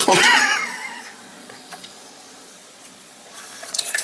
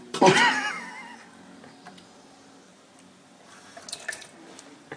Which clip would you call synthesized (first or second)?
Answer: first